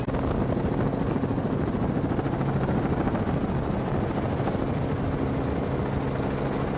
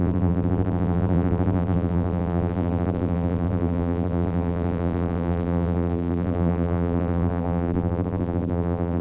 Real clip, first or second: first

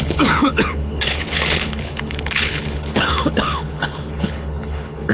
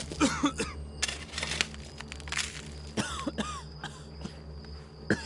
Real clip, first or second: second